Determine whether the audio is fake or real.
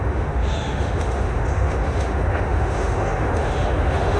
fake